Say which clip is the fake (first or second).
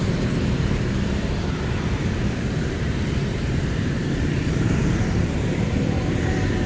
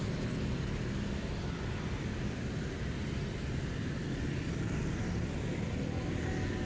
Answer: first